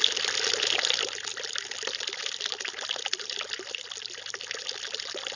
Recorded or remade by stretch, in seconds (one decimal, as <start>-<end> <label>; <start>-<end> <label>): 0.0-1.3 recorded; 1.3-4.5 remade; 4.5-5.4 recorded